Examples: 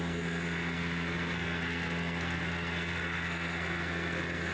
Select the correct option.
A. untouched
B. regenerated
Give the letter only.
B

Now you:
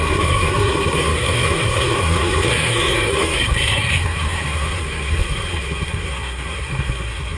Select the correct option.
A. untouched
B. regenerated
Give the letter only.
B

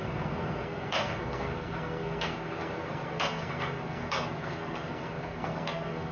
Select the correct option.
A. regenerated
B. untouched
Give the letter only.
A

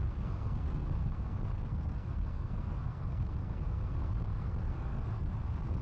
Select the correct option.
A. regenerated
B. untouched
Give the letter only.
A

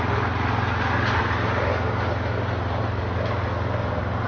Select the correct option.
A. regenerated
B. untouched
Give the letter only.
B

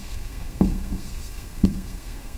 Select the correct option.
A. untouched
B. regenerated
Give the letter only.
B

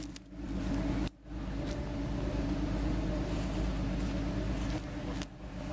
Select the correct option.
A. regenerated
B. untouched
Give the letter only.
B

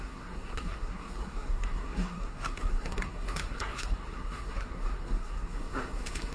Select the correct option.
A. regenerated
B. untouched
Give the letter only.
A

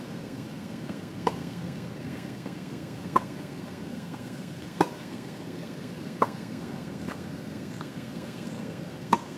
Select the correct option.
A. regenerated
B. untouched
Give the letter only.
A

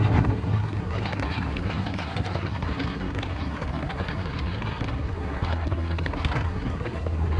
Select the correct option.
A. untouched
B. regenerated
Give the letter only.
B